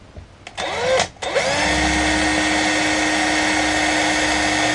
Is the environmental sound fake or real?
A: real